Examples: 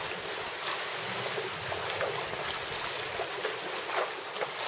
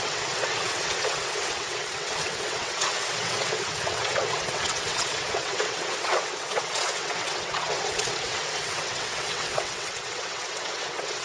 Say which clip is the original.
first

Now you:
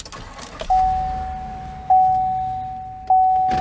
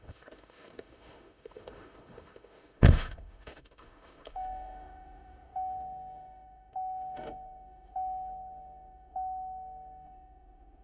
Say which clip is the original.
first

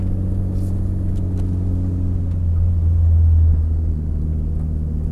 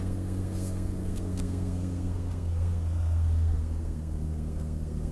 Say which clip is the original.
first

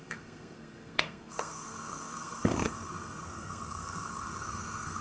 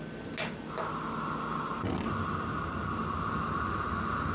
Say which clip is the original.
second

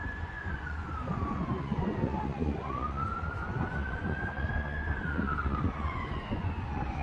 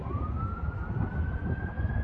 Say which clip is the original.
second